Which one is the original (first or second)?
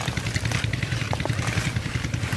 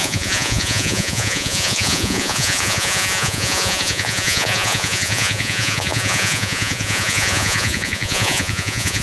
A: first